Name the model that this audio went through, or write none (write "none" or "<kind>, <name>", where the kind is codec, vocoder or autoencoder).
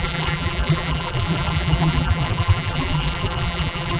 vocoder, BigVGAN v2